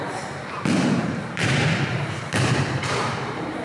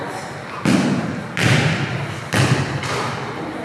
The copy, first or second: first